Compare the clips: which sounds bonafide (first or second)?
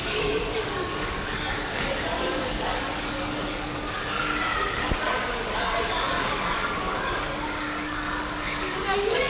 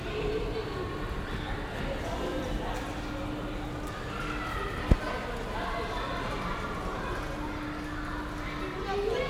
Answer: second